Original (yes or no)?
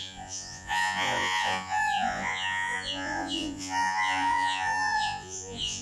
no